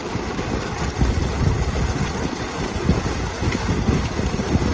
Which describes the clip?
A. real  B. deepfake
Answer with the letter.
A